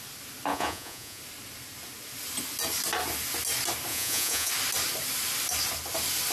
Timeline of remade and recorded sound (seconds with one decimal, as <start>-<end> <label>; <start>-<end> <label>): 0.0-0.5 recorded; 0.5-1.2 remade; 1.2-3.9 recorded; 3.9-4.5 remade; 4.5-6.3 recorded